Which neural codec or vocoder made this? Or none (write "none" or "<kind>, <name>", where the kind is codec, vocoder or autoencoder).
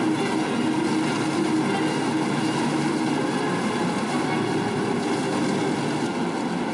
none